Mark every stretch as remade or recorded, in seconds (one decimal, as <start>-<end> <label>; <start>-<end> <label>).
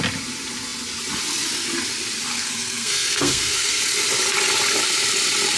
0.0-2.3 recorded; 2.3-3.8 remade; 3.8-5.6 recorded